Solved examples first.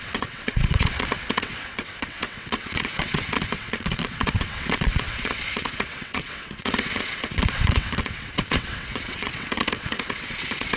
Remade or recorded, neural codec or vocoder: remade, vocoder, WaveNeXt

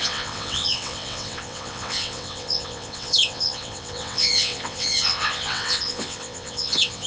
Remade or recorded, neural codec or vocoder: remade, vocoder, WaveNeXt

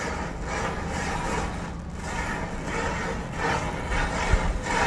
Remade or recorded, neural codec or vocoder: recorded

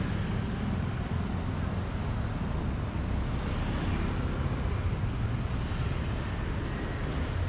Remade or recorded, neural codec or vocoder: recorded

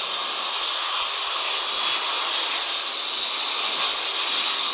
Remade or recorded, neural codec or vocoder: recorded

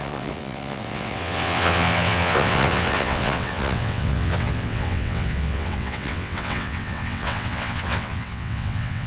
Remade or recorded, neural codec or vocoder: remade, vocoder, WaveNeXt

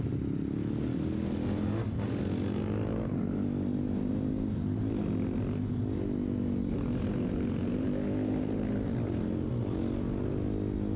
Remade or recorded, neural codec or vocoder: recorded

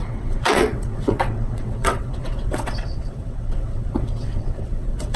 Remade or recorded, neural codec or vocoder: remade, vocoder, WaveNeXt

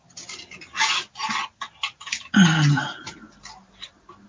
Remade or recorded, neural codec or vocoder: recorded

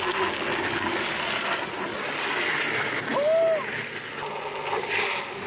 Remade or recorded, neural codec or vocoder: recorded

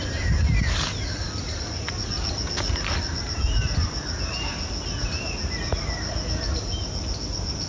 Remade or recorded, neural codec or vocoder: recorded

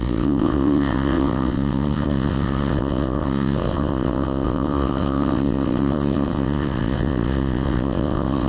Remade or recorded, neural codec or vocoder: remade, vocoder, WaveNeXt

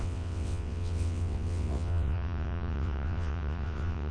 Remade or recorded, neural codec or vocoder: remade, vocoder, WaveNeXt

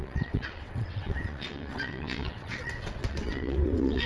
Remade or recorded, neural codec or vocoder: remade, vocoder, WaveNeXt